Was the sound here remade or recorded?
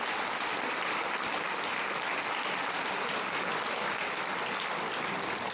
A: recorded